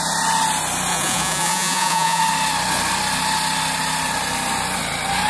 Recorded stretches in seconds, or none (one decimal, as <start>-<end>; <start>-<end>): 0.0-0.9; 2.2-5.3